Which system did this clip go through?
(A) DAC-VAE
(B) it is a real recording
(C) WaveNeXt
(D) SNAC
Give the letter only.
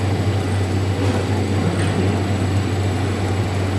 B